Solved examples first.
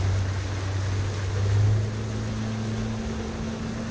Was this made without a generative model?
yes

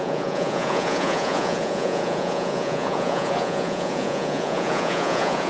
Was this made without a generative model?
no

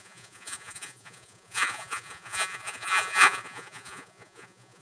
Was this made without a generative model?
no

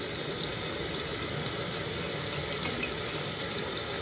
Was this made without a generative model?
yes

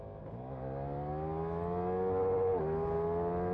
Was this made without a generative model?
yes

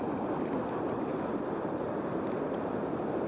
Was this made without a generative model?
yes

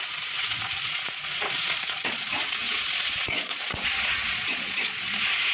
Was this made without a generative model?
no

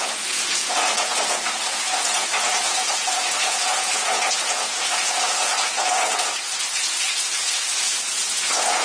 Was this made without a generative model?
no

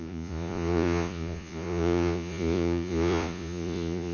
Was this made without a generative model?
no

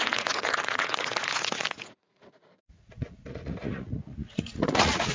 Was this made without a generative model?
no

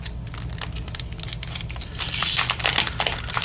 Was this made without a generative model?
yes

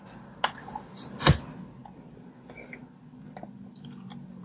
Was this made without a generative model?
yes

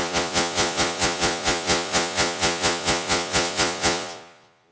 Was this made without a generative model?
no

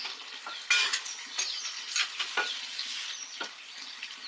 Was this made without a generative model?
yes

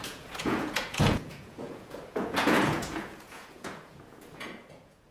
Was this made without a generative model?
no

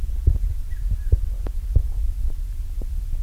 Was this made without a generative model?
yes